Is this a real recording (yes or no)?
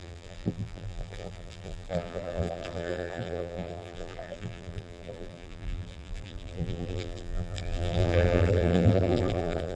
no